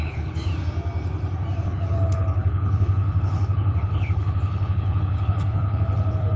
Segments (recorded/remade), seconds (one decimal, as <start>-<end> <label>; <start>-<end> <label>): 0.0-0.5 remade; 0.5-1.6 recorded; 1.6-6.4 remade